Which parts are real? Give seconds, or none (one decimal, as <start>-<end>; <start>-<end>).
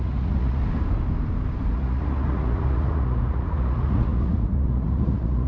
0.6-1.7